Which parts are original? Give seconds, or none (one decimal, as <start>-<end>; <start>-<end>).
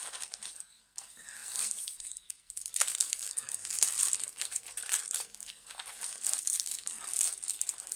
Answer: none